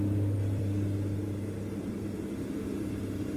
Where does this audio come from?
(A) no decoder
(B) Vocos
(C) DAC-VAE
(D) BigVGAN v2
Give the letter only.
D